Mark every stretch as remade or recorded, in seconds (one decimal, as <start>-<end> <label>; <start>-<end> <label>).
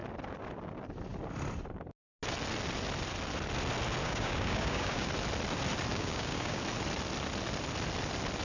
0.0-4.0 recorded; 4.0-5.1 remade; 5.1-5.9 recorded; 5.9-6.6 remade; 6.6-8.4 recorded